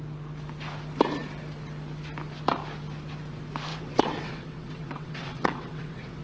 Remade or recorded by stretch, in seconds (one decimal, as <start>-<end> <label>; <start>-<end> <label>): 0.0-3.7 recorded; 3.7-6.2 remade